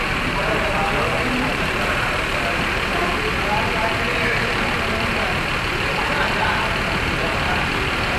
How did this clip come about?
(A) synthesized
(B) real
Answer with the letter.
A